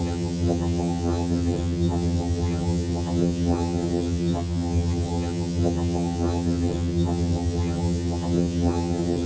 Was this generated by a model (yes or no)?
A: yes